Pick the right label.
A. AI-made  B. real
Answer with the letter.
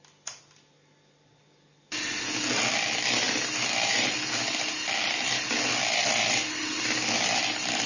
B